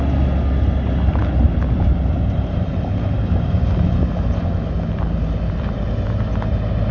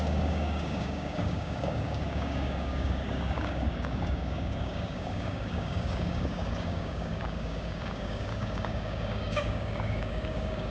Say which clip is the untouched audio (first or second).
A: first